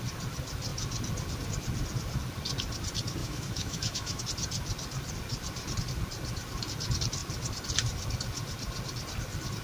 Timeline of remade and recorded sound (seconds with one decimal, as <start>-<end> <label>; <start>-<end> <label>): 0.0-3.2 recorded; 3.2-4.2 remade; 4.2-9.6 recorded